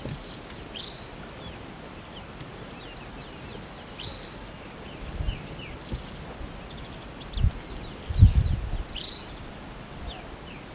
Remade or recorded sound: recorded